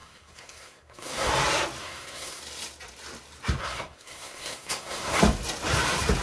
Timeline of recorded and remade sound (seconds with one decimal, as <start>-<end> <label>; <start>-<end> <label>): 0.0-1.3 remade; 1.3-1.8 recorded; 1.8-2.4 remade; 2.4-3.6 recorded; 3.6-5.2 remade; 5.2-6.2 recorded